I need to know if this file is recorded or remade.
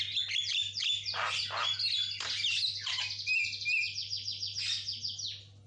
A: recorded